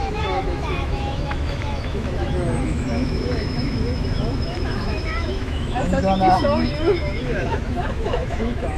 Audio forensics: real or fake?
fake